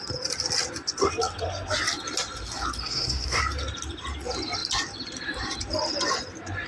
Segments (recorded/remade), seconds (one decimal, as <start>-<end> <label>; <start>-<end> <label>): 0.0-2.8 recorded; 2.8-3.4 remade; 3.4-6.7 recorded